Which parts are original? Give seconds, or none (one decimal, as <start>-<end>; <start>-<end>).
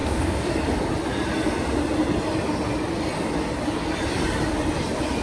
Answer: 0.5-5.2